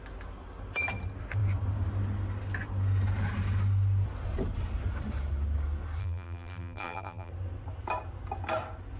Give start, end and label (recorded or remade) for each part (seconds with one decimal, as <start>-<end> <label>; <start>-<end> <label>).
0.0-6.0 recorded; 6.0-7.3 remade; 7.3-9.0 recorded